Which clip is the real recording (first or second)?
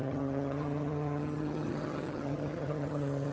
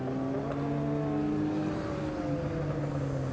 second